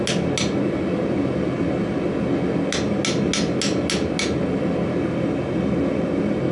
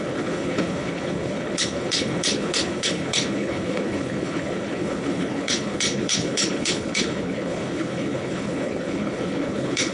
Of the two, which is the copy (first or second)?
second